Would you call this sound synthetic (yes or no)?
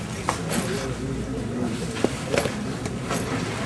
no